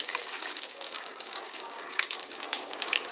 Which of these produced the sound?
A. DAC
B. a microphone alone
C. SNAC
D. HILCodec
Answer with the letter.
A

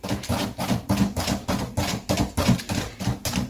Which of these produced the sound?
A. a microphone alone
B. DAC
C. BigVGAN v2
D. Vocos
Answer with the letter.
A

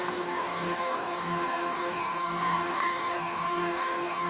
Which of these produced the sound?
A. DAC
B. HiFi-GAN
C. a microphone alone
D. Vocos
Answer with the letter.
A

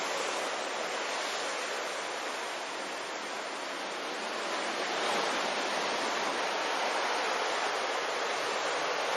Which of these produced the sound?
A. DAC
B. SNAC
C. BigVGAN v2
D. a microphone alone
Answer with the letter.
D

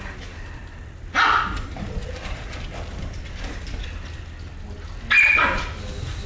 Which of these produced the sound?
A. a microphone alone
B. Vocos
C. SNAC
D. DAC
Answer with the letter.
A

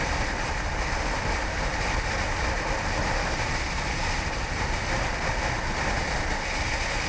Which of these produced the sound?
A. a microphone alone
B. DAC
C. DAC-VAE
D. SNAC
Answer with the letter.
A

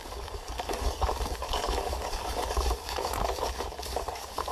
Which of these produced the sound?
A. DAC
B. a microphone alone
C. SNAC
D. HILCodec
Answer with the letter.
A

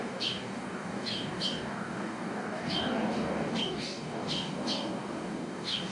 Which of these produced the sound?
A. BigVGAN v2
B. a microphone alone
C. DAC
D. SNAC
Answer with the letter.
C